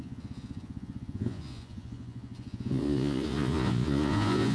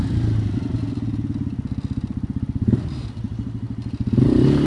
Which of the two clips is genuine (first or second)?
second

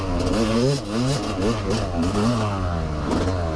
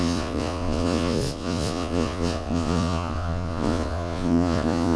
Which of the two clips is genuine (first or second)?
first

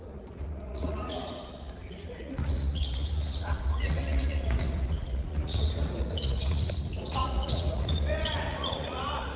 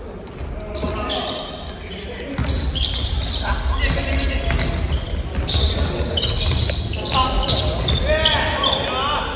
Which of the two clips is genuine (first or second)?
second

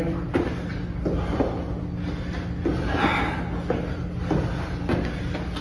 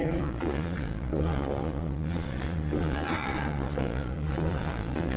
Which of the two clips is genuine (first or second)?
first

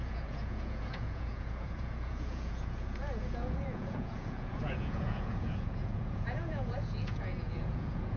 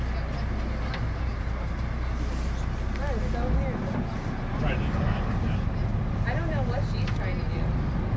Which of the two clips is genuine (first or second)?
second